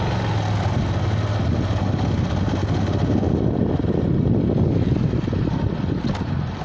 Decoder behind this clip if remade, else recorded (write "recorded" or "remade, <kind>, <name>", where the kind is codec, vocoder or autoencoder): recorded